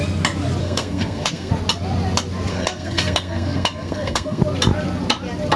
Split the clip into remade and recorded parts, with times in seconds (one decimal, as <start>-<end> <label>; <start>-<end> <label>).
0.0-0.6 recorded; 0.6-1.5 remade; 1.5-2.5 recorded; 2.5-4.4 remade; 4.4-5.6 recorded